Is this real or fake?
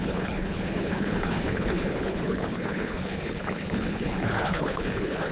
fake